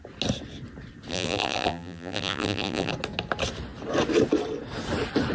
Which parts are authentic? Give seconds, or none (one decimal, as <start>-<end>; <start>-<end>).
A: 0.0-1.1; 2.9-5.3

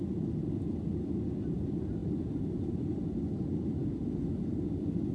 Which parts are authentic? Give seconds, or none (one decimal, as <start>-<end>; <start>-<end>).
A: 0.0-2.0; 2.8-5.1